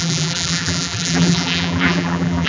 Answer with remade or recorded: remade